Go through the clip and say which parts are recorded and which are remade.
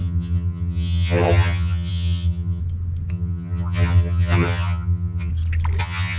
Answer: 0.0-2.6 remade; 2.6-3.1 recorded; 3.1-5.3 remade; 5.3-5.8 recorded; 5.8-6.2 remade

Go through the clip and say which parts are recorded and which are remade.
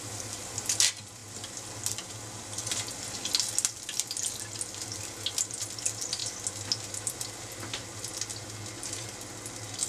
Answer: 0.0-9.9 recorded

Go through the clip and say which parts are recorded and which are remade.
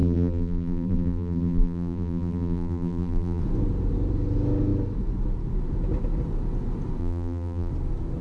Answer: 0.0-3.4 remade; 3.4-7.0 recorded; 7.0-7.7 remade; 7.7-8.2 recorded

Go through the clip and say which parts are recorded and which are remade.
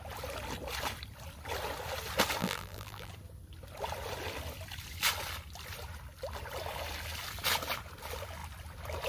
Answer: 0.0-2.4 recorded; 2.4-3.1 remade; 3.1-9.1 recorded